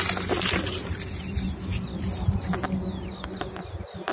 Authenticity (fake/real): real